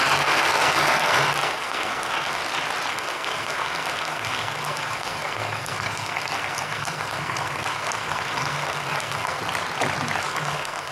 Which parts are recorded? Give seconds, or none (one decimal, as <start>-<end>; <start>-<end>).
2.4-2.9; 9.4-10.2